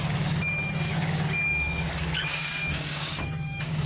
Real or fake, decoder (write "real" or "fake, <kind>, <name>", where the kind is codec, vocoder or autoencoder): fake, codec, DAC